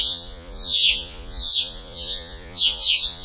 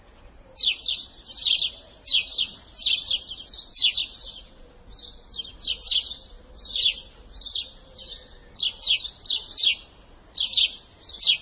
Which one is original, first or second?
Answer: second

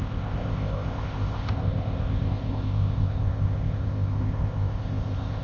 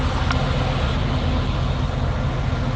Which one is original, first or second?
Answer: second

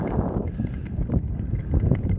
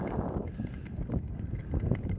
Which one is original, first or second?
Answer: second